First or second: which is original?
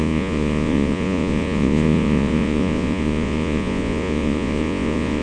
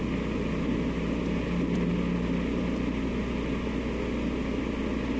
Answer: second